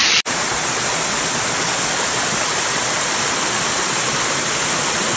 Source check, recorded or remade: recorded